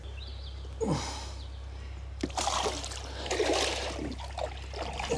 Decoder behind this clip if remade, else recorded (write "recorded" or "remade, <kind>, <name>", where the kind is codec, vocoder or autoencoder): recorded